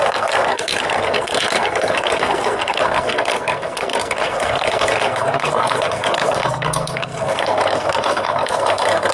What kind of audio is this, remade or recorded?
remade